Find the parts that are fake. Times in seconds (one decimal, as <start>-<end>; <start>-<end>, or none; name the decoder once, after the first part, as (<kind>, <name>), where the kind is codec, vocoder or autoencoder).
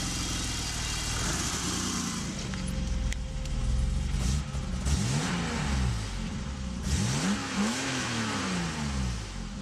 7.4-8.4 (autoencoder, DAC-VAE)